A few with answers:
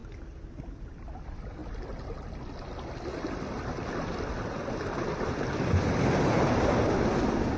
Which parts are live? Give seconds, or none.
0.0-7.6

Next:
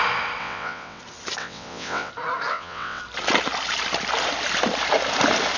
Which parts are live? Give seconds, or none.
0.0-0.4; 1.0-1.4; 2.1-2.5; 3.0-5.6

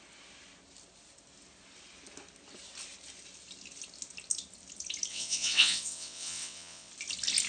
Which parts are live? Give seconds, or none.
0.0-5.1; 6.9-7.5